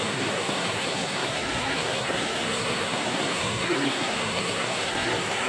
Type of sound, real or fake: fake